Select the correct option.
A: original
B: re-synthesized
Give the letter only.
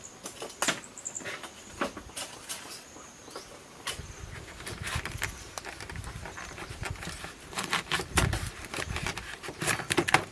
A